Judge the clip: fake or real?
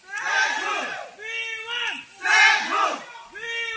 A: real